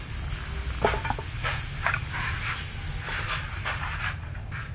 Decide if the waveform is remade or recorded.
recorded